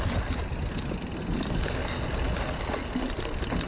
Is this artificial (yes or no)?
no